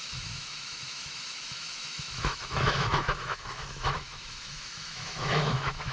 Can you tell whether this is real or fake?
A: fake